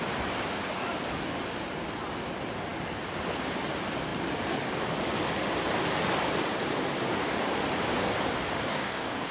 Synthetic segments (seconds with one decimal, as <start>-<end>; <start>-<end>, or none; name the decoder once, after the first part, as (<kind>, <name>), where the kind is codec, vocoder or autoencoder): 8.7-9.3 (codec, DAC)

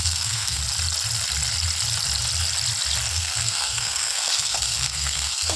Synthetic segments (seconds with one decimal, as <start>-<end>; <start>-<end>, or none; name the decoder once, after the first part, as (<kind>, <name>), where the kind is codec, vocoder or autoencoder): 0.0-0.6 (codec, SNAC); 3.1-5.6

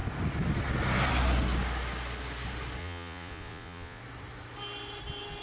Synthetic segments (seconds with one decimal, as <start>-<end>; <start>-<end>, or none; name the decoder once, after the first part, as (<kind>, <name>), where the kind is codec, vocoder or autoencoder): 2.8-4.0 (vocoder, Vocos)

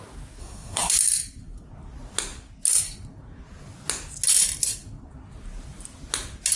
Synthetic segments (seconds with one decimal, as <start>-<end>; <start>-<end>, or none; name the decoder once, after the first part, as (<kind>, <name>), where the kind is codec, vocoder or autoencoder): 0.4-0.9 (codec, SNAC)